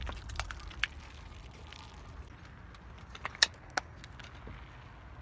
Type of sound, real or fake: real